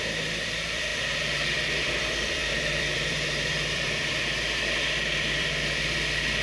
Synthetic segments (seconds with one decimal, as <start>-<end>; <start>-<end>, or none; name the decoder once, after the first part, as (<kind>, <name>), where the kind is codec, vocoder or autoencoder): 0.0-6.4 (vocoder, BigVGAN v2)

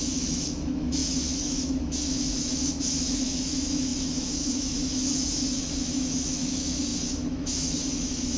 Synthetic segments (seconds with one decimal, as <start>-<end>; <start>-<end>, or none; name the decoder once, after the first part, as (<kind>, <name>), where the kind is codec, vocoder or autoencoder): 0.0-8.4 (autoencoder, DAC-VAE)